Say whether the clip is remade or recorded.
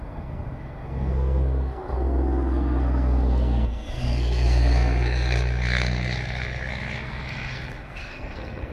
remade